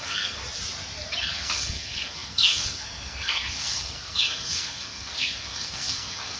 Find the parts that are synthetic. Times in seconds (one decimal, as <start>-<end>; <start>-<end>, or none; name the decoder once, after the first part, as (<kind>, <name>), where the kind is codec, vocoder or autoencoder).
0.0-0.4 (codec, SNAC); 1.2-6.4